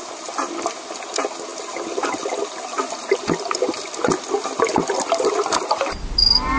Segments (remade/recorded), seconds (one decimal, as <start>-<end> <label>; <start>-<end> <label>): 0.0-6.6 recorded